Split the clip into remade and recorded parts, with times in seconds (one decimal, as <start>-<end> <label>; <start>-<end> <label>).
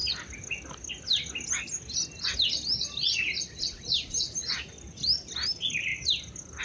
0.0-6.6 recorded